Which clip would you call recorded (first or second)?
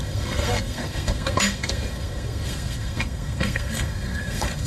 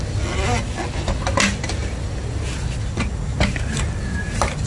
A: second